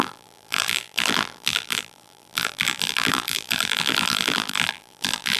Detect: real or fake fake